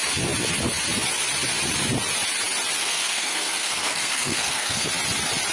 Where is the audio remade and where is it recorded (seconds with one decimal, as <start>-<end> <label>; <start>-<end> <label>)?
0.0-2.8 recorded; 2.8-4.9 remade; 4.9-5.5 recorded

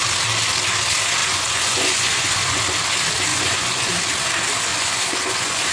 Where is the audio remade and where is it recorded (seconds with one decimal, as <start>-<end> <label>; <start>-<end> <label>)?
0.0-1.2 recorded; 1.2-2.6 remade; 2.6-3.3 recorded; 3.3-3.9 remade; 3.9-4.7 recorded; 4.7-5.7 remade